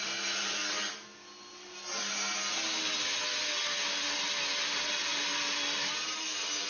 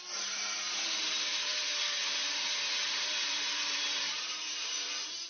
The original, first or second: first